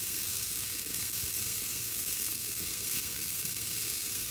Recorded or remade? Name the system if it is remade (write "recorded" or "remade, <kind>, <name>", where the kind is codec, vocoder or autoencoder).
remade, codec, SNAC